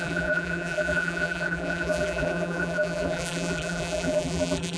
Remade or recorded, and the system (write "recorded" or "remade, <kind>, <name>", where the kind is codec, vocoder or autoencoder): remade, vocoder, BigVGAN v2